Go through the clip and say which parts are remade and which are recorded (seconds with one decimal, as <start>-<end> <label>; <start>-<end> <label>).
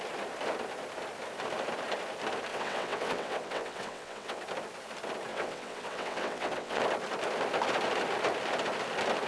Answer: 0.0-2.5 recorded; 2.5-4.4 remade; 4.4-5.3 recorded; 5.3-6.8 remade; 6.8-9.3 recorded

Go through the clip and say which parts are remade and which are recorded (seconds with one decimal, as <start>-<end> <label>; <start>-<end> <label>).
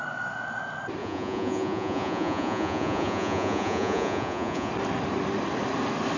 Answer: 0.0-1.0 recorded; 1.0-4.7 remade; 4.7-6.2 recorded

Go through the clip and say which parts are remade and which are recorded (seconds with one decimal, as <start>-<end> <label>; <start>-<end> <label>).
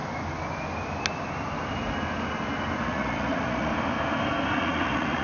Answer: 0.0-2.8 recorded; 2.8-3.7 remade; 3.7-4.5 recorded; 4.5-5.2 remade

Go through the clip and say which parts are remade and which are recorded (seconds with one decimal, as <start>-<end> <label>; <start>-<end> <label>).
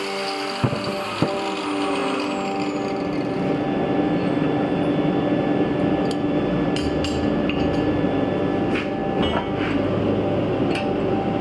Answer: 0.0-11.4 recorded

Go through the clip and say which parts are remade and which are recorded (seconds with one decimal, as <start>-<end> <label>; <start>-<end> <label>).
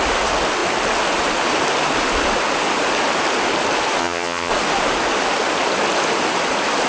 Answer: 0.0-4.0 recorded; 4.0-4.5 remade; 4.5-6.9 recorded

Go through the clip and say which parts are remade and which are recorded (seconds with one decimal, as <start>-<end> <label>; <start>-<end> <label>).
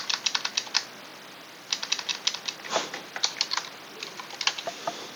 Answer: 0.0-5.2 recorded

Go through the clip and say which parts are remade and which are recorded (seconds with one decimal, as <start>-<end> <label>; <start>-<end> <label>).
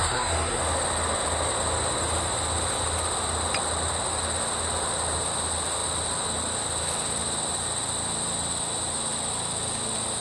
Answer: 0.0-0.6 remade; 0.6-10.2 recorded